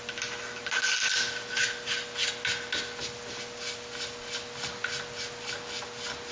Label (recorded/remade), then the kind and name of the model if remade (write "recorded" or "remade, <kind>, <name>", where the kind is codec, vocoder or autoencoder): recorded